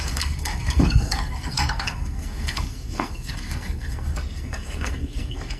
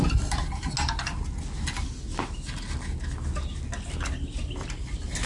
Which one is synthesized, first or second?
first